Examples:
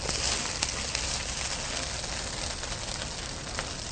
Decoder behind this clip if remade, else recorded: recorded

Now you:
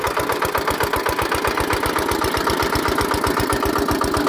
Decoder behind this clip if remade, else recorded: recorded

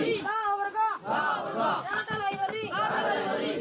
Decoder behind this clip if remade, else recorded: recorded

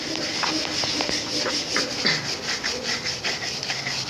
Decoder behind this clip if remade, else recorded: recorded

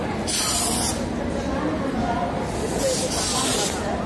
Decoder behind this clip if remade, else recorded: recorded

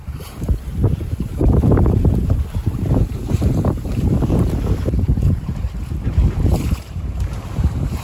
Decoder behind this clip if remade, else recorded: remade, vocoder, BigVGAN v2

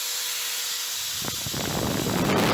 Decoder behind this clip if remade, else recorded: recorded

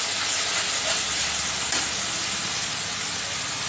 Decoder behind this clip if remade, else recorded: recorded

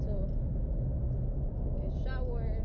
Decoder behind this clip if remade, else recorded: recorded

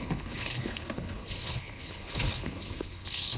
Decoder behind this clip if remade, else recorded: remade, codec, HILCodec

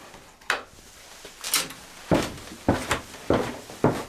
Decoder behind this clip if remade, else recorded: recorded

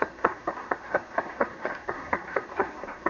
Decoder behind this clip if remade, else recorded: remade, codec, SNAC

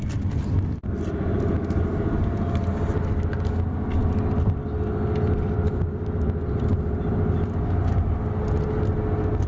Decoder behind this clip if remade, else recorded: recorded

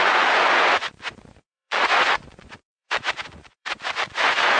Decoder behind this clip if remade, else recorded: remade, vocoder, Vocos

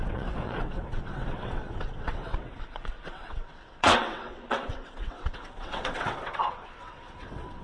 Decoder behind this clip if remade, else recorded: remade, vocoder, WaveNeXt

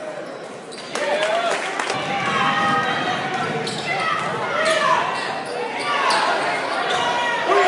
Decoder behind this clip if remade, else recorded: recorded